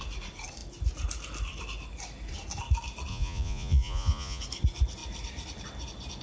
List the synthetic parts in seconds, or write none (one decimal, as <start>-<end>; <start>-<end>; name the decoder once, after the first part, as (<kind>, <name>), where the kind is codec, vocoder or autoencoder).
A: 3.1-4.4 (vocoder, Vocos)